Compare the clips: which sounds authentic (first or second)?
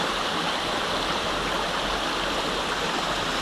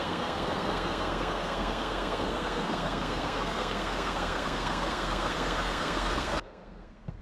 first